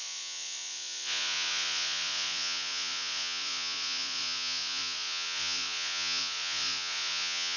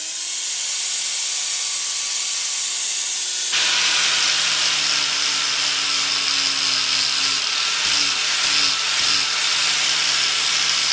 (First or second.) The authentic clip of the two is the second